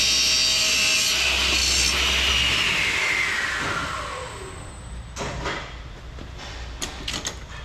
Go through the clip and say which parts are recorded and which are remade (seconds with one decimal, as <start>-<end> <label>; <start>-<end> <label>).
0.0-7.6 recorded